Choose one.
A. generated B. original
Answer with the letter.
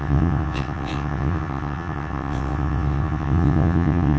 A